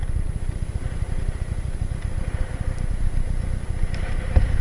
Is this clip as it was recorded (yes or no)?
yes